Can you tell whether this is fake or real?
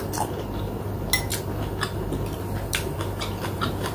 real